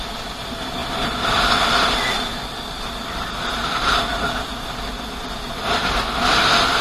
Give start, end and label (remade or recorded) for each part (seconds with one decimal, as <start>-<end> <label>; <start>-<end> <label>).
0.0-6.8 recorded